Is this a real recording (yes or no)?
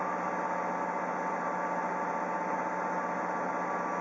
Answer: yes